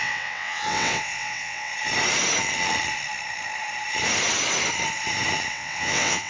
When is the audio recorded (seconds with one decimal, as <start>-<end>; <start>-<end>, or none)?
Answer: 1.7-5.5